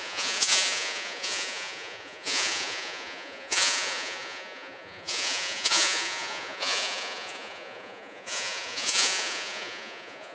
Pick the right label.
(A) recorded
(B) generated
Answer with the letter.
B